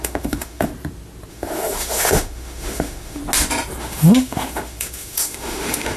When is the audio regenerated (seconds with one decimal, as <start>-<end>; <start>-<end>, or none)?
0.0-0.7; 1.3-3.2; 3.8-6.0